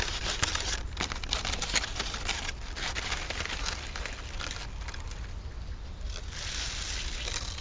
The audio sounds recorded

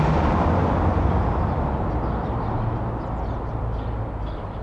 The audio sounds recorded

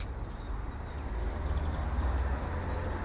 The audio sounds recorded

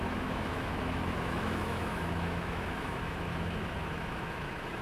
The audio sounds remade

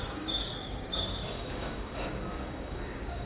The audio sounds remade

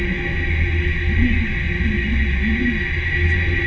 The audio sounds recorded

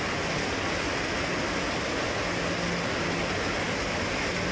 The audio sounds recorded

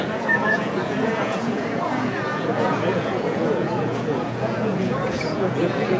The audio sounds remade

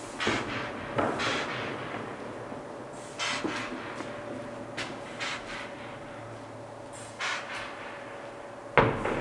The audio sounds recorded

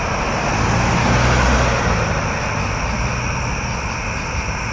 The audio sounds recorded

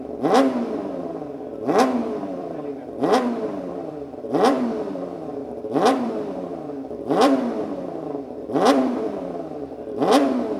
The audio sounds remade